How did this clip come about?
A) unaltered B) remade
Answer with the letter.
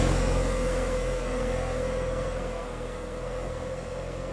B